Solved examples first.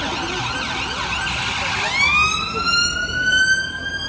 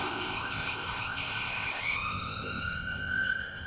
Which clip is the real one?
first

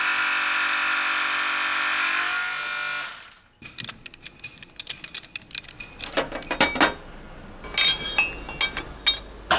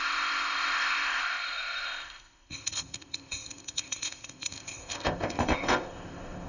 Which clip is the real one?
first